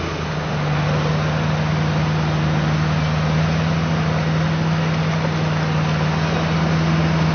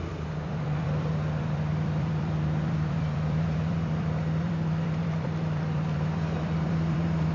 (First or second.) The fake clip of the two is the second